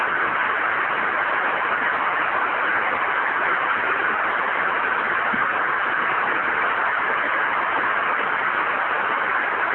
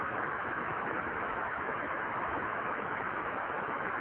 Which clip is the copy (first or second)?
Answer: second